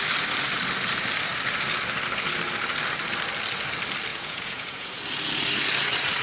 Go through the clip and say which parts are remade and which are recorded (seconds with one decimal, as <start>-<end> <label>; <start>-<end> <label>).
0.0-4.1 recorded; 4.1-5.0 remade; 5.0-6.2 recorded